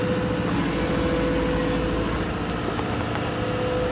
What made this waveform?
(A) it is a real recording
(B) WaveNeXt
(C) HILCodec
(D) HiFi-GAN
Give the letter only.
A